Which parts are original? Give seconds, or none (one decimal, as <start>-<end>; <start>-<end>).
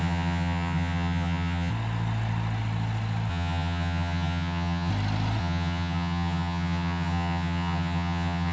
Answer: 1.7-3.3; 4.9-5.4